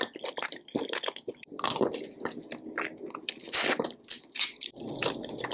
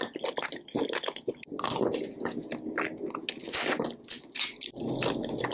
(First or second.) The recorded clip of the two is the second